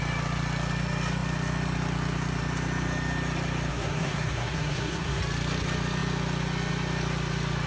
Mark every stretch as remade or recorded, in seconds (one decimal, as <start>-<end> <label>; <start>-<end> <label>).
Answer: 0.0-3.7 recorded; 3.7-5.2 remade; 5.2-7.7 recorded